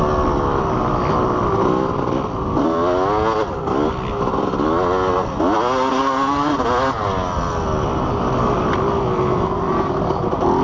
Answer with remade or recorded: recorded